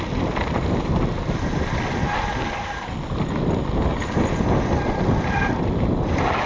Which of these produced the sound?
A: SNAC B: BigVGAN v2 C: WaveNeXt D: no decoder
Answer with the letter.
D